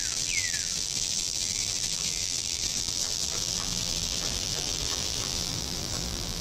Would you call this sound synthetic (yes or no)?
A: yes